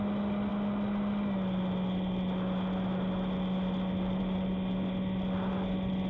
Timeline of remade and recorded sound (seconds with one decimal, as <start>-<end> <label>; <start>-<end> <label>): 0.0-6.1 recorded